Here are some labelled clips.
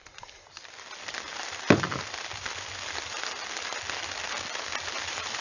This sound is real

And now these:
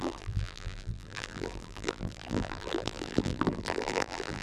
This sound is fake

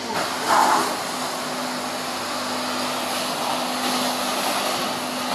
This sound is real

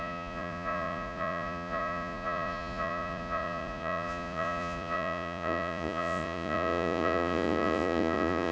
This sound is fake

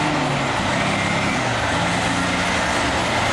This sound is real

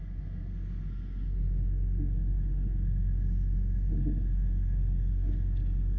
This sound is fake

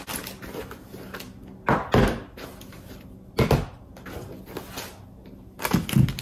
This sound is real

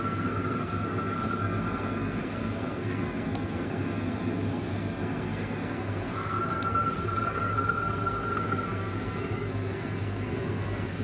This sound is fake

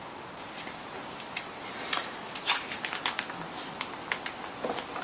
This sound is real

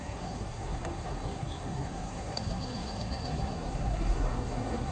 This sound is fake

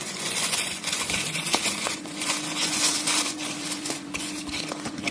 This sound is fake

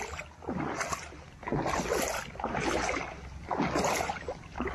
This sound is real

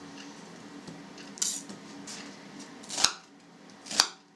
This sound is real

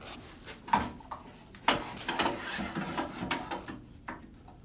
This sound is real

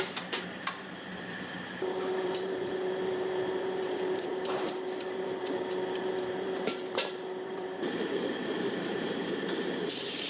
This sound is fake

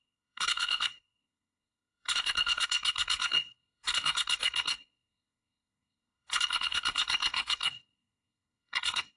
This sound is fake